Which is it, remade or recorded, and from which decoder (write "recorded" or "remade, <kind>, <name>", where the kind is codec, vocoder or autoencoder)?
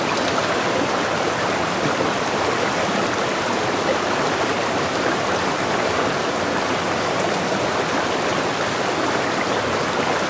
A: recorded